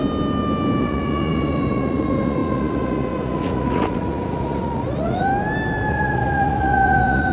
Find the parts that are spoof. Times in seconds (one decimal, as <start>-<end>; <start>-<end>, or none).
0.8-5.3; 5.9-7.3